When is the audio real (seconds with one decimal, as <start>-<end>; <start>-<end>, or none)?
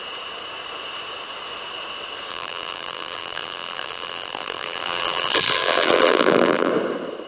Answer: 0.0-2.3; 6.7-7.3